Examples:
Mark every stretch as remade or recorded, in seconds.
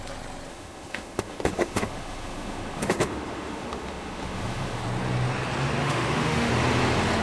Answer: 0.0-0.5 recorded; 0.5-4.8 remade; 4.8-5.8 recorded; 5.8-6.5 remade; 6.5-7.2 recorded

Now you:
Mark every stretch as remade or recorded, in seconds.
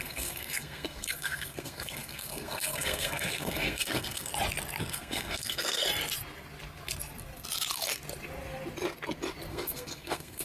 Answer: 0.0-4.3 remade; 4.3-4.8 recorded; 4.8-5.9 remade; 5.9-9.5 recorded; 9.5-10.4 remade